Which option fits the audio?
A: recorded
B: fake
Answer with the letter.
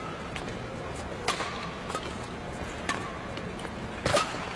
A